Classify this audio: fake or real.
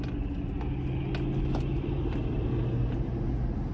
real